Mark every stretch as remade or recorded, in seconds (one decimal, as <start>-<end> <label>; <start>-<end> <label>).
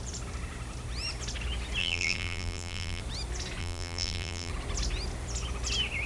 0.0-1.8 recorded; 1.8-3.0 remade; 3.0-3.6 recorded; 3.6-4.5 remade; 4.5-6.1 recorded